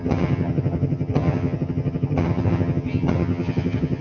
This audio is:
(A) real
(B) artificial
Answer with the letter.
B